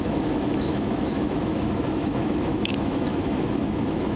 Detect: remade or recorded remade